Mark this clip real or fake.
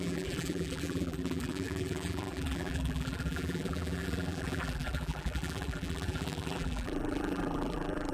fake